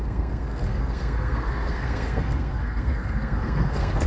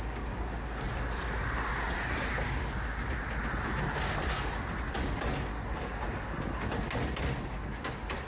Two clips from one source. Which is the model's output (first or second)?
first